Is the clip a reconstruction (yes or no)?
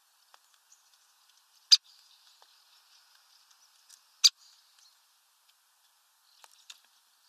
no